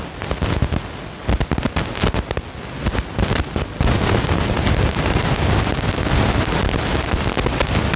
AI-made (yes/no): no